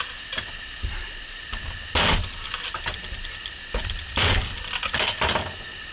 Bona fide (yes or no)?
no